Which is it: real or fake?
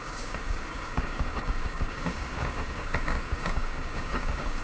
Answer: fake